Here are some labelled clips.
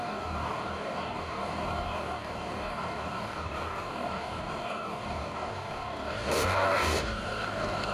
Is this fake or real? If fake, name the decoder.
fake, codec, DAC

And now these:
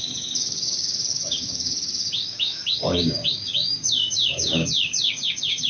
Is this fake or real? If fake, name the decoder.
fake, codec, DAC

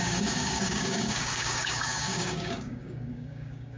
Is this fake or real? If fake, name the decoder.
fake, codec, DAC